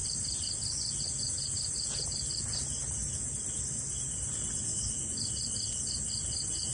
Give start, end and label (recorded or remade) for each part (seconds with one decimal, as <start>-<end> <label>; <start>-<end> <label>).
0.0-6.7 recorded